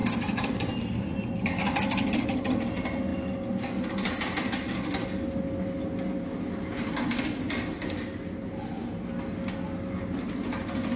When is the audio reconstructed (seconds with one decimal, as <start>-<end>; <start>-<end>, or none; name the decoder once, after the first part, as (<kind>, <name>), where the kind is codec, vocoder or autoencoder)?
none